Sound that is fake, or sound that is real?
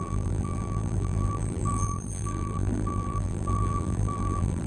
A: fake